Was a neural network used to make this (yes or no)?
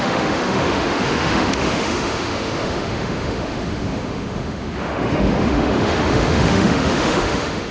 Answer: yes